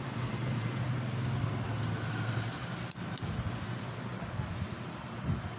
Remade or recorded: recorded